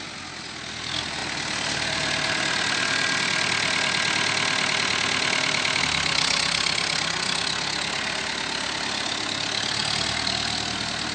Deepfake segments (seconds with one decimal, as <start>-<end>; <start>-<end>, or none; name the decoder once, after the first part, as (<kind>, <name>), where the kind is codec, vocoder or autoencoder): none